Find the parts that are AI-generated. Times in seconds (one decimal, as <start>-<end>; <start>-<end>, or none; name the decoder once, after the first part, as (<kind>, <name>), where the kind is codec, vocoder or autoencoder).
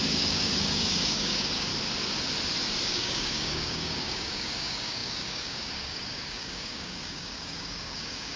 0.0-1.7 (codec, DAC); 2.9-8.4